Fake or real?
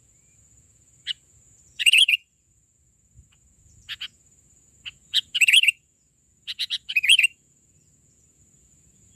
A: fake